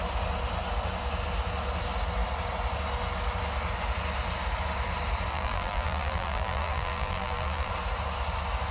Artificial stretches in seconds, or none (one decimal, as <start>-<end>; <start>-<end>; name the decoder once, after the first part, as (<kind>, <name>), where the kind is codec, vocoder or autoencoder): 5.3-7.7 (vocoder, BigVGAN v2)